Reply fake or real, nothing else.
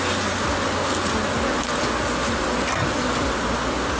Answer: real